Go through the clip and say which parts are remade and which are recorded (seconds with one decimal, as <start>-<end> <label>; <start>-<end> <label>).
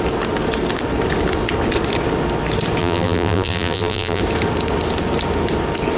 0.0-2.8 recorded; 2.8-4.2 remade; 4.2-6.0 recorded